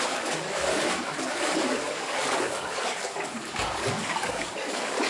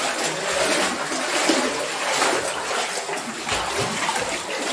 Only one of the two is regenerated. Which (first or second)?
first